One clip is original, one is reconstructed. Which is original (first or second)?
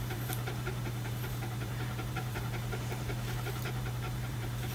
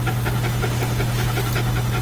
second